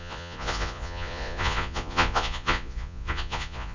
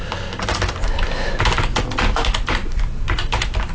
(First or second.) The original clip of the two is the second